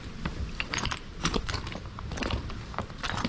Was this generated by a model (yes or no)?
yes